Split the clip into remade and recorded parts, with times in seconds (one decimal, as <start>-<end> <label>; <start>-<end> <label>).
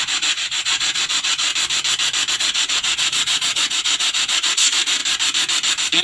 0.0-1.5 remade; 1.5-2.3 recorded; 2.3-5.0 remade; 5.0-6.0 recorded